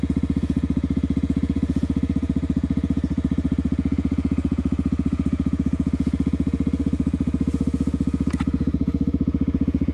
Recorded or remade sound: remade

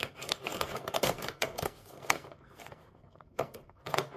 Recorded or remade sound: remade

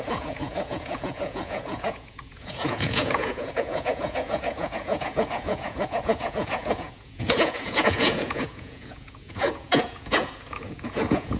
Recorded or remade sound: remade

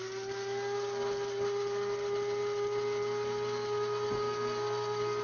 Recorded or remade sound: recorded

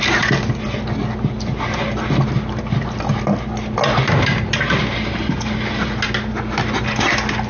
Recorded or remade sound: recorded